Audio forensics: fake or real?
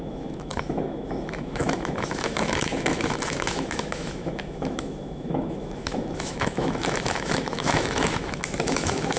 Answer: fake